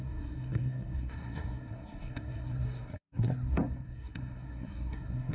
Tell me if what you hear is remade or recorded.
remade